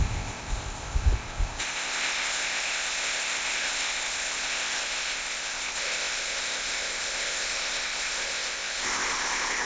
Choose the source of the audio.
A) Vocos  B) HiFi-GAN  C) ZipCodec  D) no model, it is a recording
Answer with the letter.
C